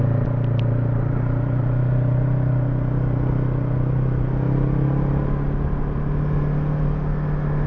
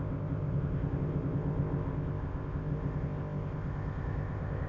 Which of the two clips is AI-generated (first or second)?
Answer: second